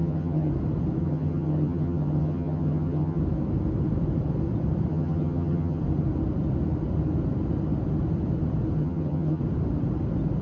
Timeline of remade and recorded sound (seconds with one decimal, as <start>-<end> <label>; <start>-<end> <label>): 0.0-0.5 remade; 0.5-1.0 recorded; 1.0-3.2 remade; 3.2-4.9 recorded; 4.9-5.8 remade; 5.8-8.8 recorded; 8.8-9.4 remade; 9.4-10.4 recorded